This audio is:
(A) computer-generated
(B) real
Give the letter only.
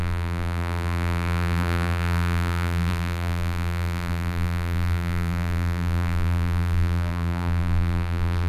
A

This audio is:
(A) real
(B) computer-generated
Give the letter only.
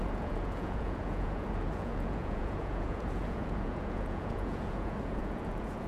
B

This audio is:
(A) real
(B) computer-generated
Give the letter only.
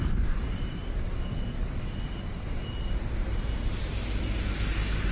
A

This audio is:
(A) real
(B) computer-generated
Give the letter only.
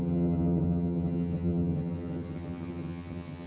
B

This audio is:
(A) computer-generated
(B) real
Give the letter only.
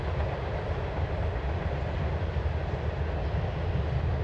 B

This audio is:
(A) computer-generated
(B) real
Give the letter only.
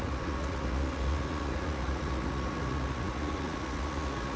A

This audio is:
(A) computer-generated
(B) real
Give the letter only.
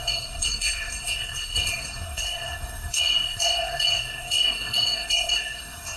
A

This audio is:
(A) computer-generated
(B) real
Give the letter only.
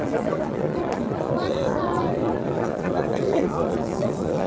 A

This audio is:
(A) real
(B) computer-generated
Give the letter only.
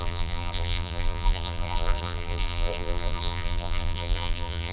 B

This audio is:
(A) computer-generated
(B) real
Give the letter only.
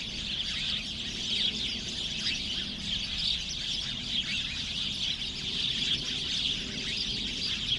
B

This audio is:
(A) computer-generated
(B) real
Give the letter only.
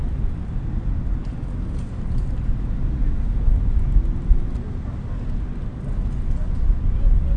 B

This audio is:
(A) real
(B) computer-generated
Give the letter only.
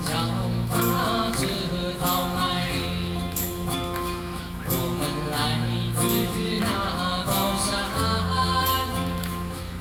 B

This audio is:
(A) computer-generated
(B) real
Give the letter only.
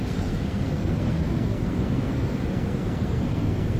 A